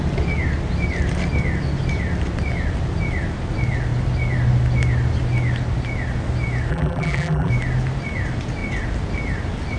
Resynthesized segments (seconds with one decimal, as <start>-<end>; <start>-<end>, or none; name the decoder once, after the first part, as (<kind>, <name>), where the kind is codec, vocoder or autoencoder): 6.7-7.5 (vocoder, BigVGAN v2)